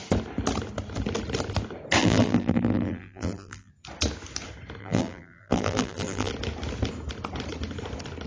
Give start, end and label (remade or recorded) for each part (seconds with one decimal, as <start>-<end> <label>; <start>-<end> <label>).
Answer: 0.0-2.0 recorded; 2.0-3.7 remade; 3.7-4.8 recorded; 4.8-6.3 remade; 6.3-8.3 recorded